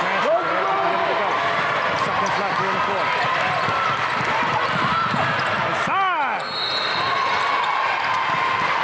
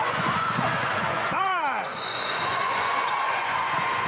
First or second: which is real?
first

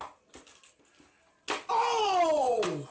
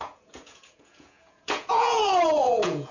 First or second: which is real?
first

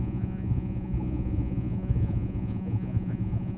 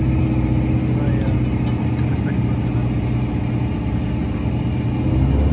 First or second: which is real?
second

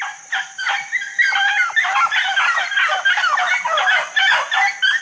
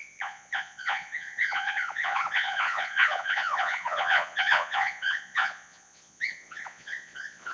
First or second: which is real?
first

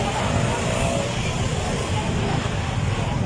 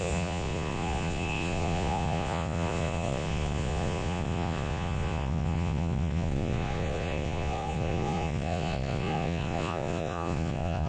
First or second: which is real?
first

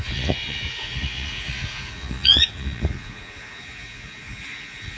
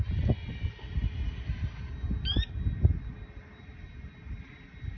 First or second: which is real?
second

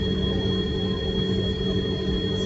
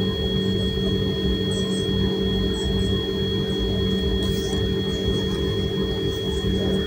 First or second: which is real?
second